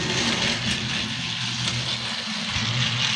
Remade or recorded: recorded